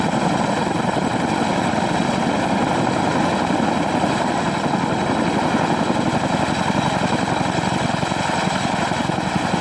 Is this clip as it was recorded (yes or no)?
yes